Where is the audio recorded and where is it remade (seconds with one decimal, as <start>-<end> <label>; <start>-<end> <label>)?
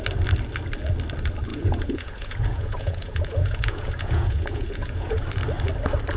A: 0.0-1.5 recorded; 1.5-5.2 remade; 5.2-6.2 recorded